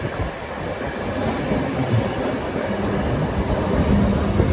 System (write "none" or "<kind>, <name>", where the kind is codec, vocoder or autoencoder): none